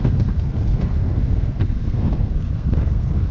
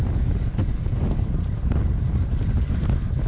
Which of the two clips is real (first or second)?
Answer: second